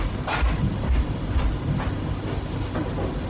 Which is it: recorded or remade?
recorded